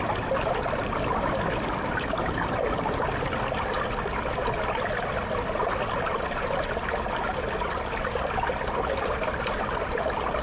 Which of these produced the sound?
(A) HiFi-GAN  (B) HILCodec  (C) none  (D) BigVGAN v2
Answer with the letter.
C